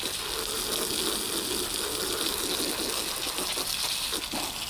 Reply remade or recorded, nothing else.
recorded